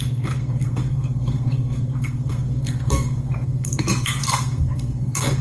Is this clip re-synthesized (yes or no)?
yes